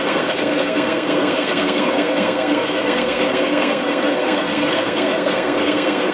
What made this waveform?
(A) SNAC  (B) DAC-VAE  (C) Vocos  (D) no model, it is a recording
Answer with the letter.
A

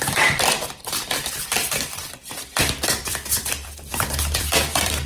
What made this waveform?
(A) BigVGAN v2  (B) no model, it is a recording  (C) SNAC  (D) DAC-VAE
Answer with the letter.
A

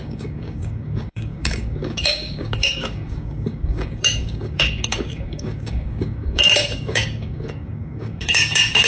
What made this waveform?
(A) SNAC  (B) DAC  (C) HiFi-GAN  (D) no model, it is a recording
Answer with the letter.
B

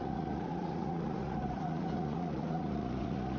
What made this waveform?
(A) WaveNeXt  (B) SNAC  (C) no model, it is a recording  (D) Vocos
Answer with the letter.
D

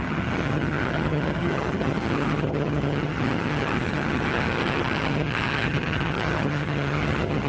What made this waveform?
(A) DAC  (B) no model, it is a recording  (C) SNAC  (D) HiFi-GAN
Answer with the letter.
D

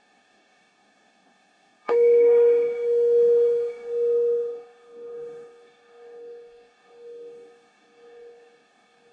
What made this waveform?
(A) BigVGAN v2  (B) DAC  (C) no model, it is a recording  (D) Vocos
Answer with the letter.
B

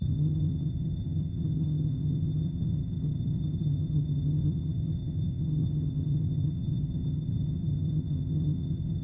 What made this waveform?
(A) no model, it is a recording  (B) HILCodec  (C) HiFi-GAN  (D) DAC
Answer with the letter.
C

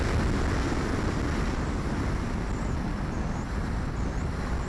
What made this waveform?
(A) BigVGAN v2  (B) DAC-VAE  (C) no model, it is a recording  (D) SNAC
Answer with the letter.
C